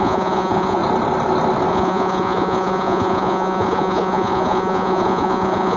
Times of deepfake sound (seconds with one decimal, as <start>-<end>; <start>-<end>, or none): 0.0-0.8; 1.7-5.8

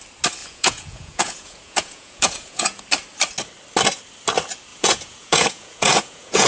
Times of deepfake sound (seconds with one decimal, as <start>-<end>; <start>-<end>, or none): 0.4-2.8; 4.7-6.5